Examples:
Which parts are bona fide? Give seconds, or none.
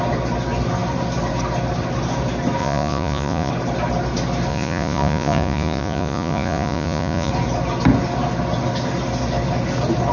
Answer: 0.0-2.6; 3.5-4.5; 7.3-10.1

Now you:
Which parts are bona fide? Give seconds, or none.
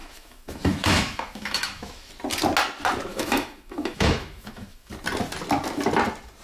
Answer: 2.1-3.1; 4.9-6.4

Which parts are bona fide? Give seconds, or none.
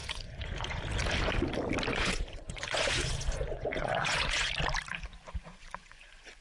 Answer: 0.8-1.9; 4.5-4.9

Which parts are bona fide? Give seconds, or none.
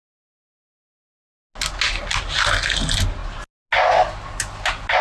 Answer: 0.0-5.0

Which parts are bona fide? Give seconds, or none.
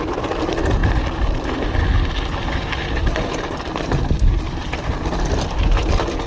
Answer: 0.0-6.3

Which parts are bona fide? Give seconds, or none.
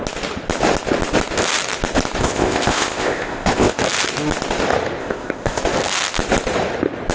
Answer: 0.0-2.2; 3.8-5.0; 5.6-7.1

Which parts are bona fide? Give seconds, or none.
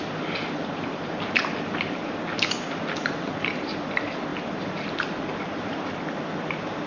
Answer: 0.0-6.9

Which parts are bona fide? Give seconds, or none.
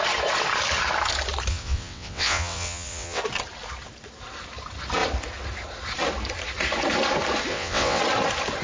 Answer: 0.0-1.5; 3.2-7.5; 8.0-8.6